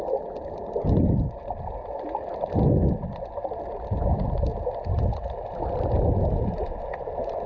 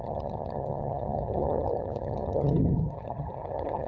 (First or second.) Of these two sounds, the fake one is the second